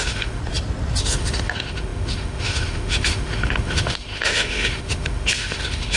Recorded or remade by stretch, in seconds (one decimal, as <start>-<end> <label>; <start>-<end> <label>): 0.0-0.4 remade; 0.4-1.0 recorded; 1.0-6.0 remade